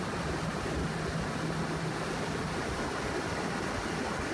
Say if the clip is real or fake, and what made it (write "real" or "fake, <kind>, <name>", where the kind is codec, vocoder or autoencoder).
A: real